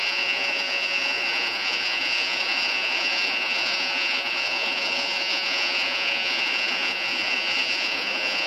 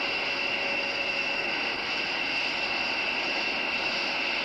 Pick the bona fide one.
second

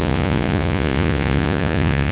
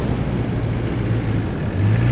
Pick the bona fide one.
second